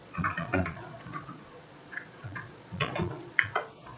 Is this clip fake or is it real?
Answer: fake